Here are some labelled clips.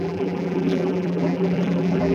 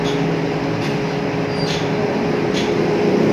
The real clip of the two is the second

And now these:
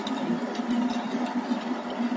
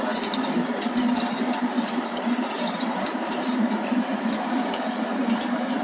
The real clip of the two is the first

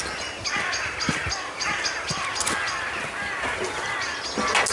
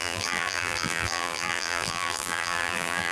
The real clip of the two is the first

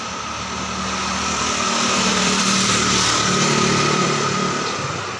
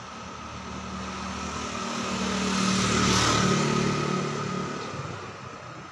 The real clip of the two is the second